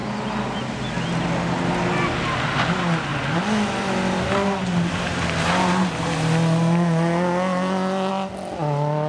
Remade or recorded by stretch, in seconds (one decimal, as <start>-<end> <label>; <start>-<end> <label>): 0.0-9.1 recorded